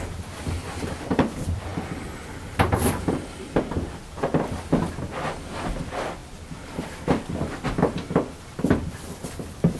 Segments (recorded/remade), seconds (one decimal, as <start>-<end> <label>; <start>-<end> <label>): 0.0-9.8 recorded